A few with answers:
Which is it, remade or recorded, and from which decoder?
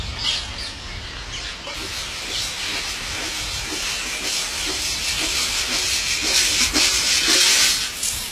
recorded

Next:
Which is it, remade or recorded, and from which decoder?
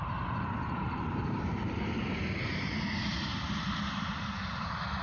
remade, vocoder, BigVGAN v2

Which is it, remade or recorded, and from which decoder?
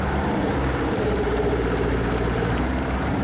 remade, vocoder, BigVGAN v2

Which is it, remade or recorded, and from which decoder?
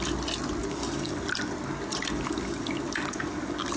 recorded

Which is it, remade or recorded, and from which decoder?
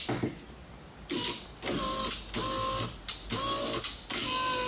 recorded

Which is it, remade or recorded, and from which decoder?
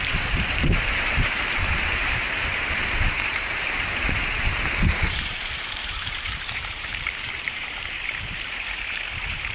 remade, vocoder, BigVGAN v2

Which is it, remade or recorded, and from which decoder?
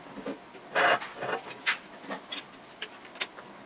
recorded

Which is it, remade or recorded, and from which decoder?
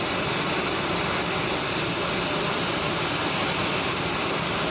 recorded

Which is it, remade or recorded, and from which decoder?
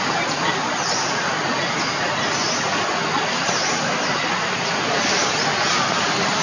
remade, vocoder, BigVGAN v2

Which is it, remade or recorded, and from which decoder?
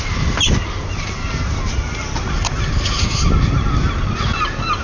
recorded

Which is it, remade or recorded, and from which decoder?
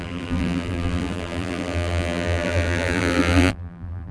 remade, vocoder, BigVGAN v2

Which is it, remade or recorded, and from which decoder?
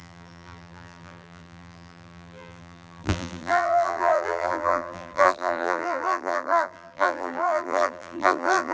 remade, vocoder, BigVGAN v2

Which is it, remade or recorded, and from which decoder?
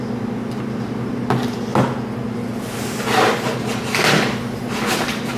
recorded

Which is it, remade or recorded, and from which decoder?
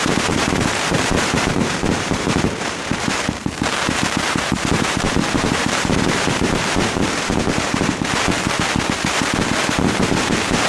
remade, vocoder, BigVGAN v2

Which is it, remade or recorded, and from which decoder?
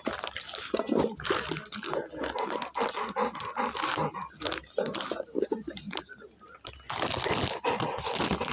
recorded